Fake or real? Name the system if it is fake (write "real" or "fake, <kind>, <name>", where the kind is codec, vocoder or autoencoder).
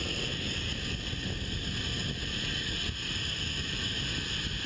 real